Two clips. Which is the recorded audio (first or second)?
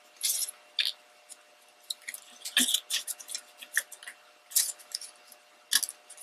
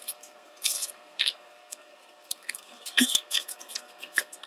first